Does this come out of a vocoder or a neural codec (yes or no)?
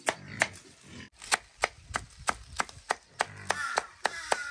no